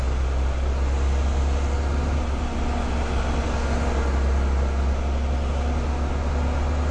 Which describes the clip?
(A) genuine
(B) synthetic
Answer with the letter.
A